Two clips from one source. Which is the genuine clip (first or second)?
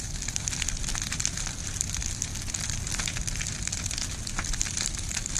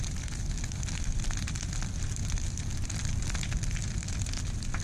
second